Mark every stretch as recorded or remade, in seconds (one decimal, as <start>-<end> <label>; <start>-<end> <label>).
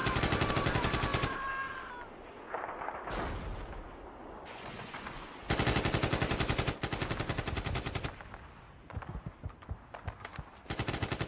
0.0-4.2 recorded; 4.2-5.5 remade; 5.5-11.3 recorded